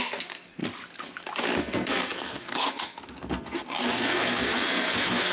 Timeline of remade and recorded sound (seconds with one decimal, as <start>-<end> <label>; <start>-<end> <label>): 0.0-0.6 remade; 0.6-1.6 recorded; 1.6-5.3 remade